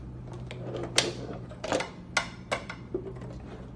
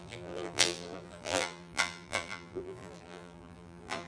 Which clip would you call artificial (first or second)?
second